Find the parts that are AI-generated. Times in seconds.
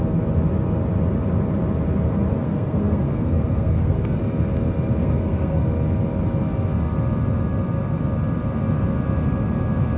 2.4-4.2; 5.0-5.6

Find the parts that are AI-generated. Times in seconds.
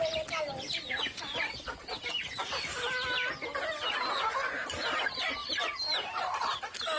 none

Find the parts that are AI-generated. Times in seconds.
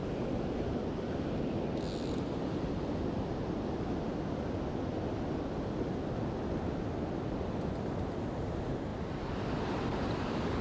none